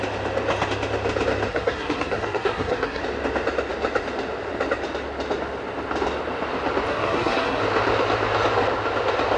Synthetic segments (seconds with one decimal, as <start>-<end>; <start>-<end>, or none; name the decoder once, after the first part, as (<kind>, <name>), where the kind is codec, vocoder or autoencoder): 1.5-3.0 (codec, SNAC); 6.9-7.6